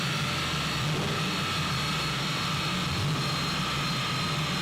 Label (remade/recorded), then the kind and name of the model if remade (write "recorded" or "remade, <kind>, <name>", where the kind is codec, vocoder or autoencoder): recorded